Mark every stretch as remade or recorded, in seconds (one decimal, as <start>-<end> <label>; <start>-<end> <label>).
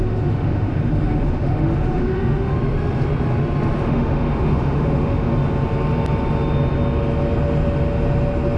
0.0-2.5 remade; 2.5-3.8 recorded; 3.8-5.3 remade; 5.3-8.6 recorded